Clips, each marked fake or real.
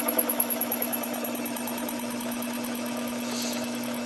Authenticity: fake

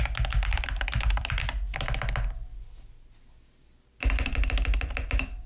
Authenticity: real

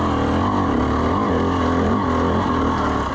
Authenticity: real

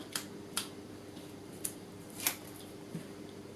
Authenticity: real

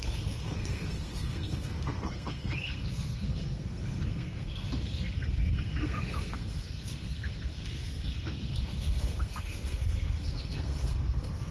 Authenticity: fake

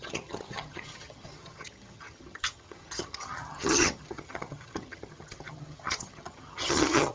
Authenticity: fake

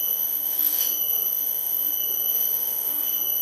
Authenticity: fake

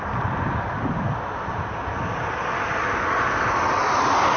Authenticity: real